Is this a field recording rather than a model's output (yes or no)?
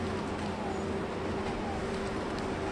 yes